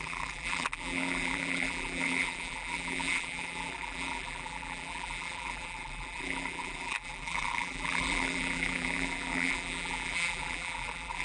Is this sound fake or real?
fake